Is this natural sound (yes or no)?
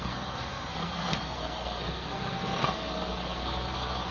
no